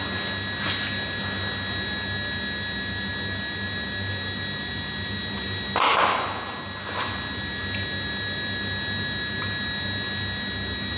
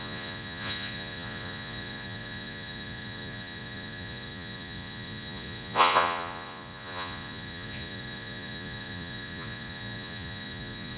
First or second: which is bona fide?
first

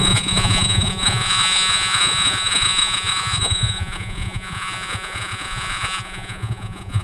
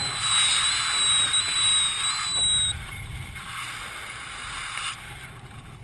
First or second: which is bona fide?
second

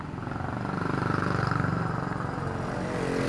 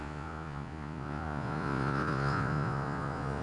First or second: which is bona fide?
first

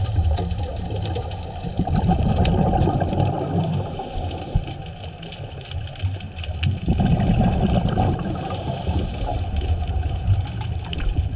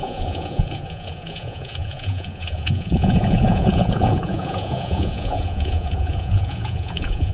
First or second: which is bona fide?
first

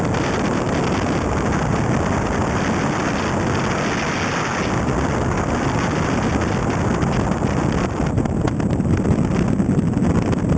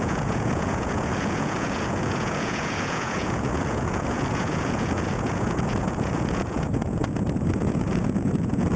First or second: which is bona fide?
first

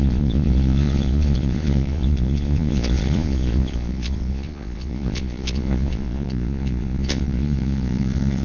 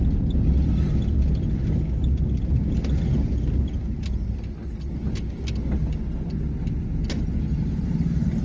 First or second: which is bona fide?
second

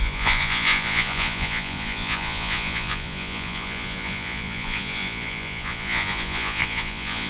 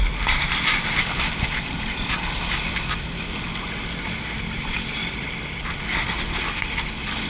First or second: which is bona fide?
second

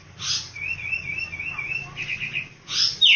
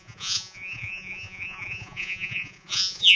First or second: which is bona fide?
first